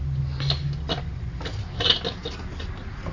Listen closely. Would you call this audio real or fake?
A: real